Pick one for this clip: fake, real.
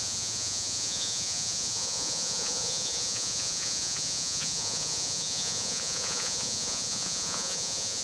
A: fake